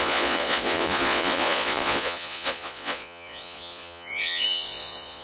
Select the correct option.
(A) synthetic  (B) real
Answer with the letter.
A